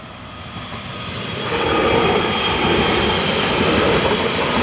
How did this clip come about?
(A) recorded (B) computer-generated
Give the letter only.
A